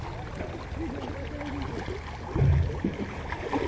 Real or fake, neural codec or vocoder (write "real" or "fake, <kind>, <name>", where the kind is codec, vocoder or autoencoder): real